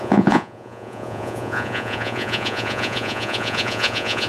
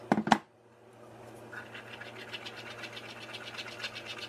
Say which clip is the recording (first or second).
second